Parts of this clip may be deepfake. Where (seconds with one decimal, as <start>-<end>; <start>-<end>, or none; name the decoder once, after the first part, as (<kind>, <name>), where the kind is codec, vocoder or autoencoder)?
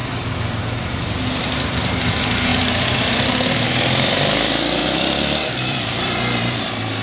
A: 2.5-3.3 (vocoder, BigVGAN v2); 4.8-6.6